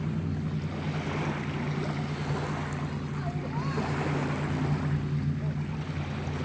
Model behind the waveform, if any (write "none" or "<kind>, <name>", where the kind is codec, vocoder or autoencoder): none